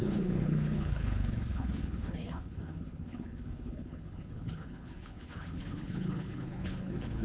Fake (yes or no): yes